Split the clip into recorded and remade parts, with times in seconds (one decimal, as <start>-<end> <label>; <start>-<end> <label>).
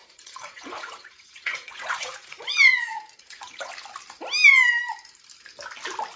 0.0-3.7 remade; 3.7-6.2 recorded